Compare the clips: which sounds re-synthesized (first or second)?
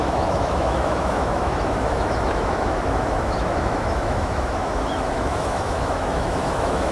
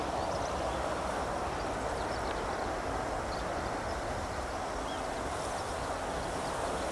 first